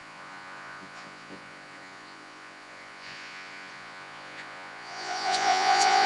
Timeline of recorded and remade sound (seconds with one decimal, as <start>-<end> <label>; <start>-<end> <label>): 0.0-6.1 remade